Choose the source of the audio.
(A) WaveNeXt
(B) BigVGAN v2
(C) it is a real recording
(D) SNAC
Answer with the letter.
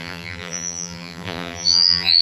B